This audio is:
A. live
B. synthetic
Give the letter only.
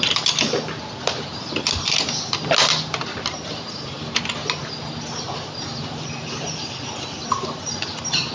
A